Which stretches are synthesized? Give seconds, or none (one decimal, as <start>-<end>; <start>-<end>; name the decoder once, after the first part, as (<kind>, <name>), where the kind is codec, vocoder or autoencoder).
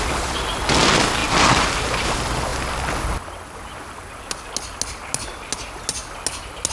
none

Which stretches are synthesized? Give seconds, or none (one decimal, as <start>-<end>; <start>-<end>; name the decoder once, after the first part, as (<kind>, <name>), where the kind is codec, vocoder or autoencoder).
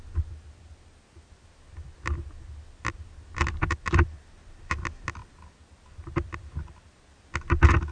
5.2-7.1 (vocoder, BigVGAN v2)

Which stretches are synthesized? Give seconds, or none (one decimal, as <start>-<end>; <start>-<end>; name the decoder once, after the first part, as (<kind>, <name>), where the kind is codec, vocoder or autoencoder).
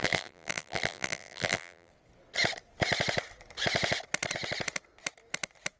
0.0-1.9 (vocoder, BigVGAN v2)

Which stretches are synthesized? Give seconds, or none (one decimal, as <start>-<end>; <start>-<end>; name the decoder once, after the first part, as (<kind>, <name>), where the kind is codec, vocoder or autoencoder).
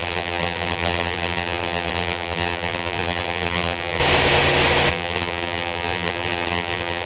0.0-4.0 (vocoder, BigVGAN v2); 4.9-7.1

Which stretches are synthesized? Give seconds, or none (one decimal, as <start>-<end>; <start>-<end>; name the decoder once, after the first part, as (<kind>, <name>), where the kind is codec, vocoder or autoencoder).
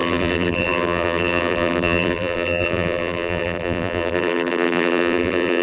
0.0-5.6 (vocoder, BigVGAN v2)